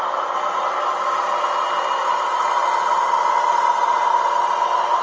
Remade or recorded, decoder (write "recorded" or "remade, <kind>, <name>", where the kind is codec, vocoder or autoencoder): recorded